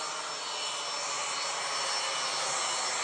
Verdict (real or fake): real